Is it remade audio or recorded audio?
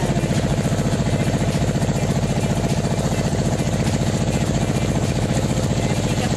recorded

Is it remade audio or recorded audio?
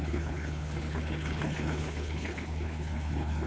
remade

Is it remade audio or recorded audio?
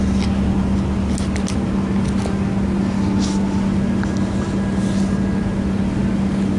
recorded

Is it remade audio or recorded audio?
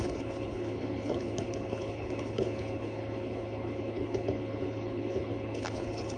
remade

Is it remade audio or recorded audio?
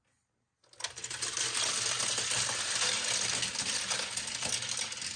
recorded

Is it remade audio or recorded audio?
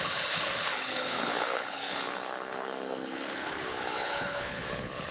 remade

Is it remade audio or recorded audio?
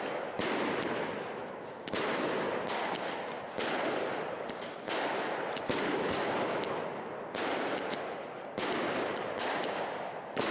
recorded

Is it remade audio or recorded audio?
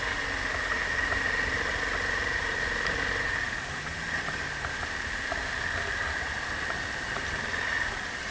recorded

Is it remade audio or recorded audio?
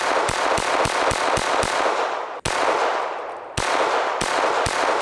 recorded